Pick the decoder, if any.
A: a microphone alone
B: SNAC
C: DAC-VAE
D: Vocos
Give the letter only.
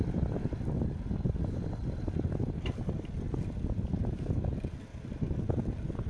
A